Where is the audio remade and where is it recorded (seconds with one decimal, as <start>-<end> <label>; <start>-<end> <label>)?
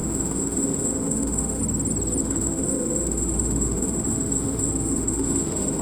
0.0-1.6 remade; 1.6-2.2 recorded; 2.2-5.8 remade